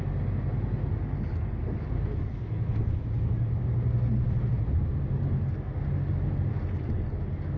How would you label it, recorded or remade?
recorded